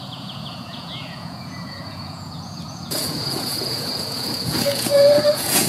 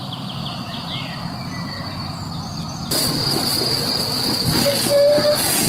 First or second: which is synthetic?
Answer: first